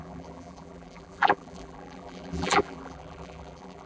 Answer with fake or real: fake